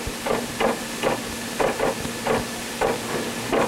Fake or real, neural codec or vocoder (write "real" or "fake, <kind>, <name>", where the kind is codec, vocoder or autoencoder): real